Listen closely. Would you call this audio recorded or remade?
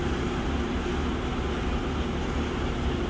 recorded